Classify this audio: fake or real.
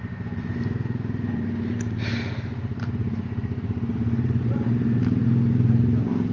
real